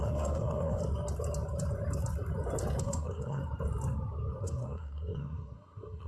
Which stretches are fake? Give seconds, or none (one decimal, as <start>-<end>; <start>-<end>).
0.0-0.8; 2.8-3.4; 4.4-6.1